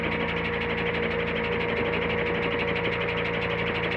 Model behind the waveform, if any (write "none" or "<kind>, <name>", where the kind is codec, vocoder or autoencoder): none